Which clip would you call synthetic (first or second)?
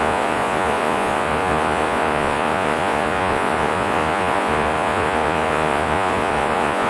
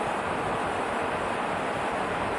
first